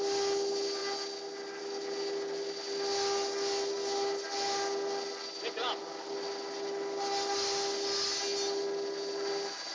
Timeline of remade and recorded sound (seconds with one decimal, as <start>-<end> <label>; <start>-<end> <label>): 0.0-9.7 recorded

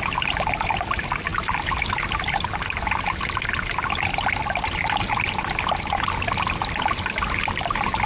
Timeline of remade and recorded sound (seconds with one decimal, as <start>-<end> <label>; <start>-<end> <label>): 0.0-8.1 recorded